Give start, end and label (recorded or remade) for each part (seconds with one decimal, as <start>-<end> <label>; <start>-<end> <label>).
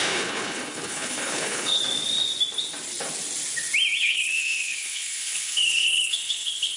0.0-1.8 remade; 1.8-4.0 recorded; 4.0-6.8 remade